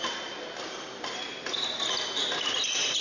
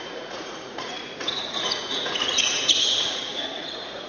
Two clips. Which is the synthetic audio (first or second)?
second